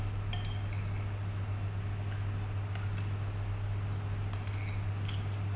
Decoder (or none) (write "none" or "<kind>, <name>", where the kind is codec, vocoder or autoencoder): none